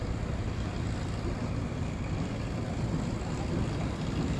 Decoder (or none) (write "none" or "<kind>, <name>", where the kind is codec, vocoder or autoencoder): none